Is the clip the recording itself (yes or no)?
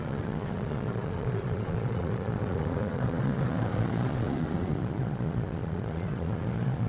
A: no